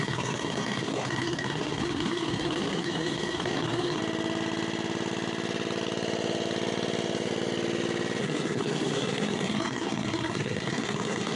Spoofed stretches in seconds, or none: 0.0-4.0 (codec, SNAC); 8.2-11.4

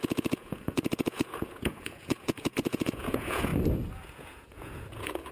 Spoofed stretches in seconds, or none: 0.0-3.5 (vocoder, Vocos); 4.1-5.3